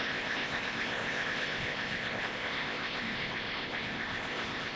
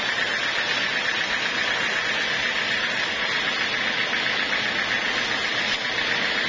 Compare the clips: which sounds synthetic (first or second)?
first